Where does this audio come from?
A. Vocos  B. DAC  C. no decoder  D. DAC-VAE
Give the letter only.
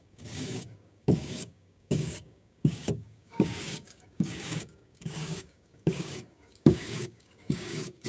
B